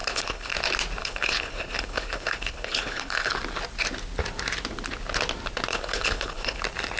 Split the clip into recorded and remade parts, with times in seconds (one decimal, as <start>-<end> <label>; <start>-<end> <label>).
0.0-0.5 remade; 0.5-1.0 recorded; 1.0-3.3 remade; 3.3-5.7 recorded; 5.7-6.6 remade; 6.6-7.0 recorded